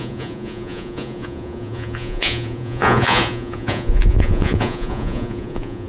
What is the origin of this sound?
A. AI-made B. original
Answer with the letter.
A